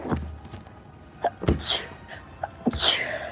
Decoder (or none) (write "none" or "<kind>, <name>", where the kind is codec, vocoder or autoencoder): none